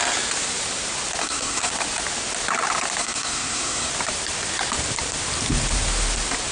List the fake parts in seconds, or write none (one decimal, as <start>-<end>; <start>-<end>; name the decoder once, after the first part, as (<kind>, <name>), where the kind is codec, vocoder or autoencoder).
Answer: 1.2-1.7 (codec, SNAC); 3.0-3.9